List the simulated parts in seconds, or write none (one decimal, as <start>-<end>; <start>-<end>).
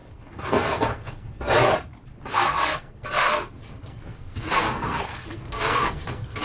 0.0-1.4; 2.3-6.4